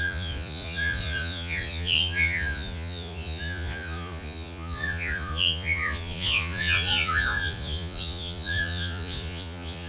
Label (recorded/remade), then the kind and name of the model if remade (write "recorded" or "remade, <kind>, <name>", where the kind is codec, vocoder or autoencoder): remade, vocoder, Vocos